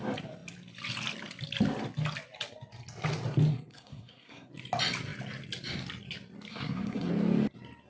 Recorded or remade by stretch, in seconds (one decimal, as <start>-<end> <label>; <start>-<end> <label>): 0.0-3.5 recorded; 3.5-4.5 remade; 4.5-6.5 recorded; 6.5-7.1 remade; 7.1-7.9 recorded